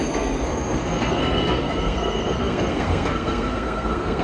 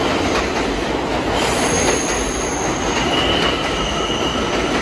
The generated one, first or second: first